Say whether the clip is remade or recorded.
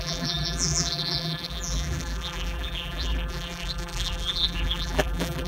remade